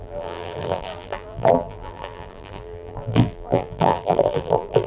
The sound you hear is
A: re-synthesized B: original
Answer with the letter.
A